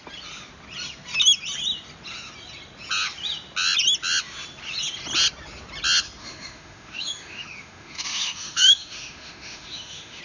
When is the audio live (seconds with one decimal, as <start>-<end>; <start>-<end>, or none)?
0.0-6.2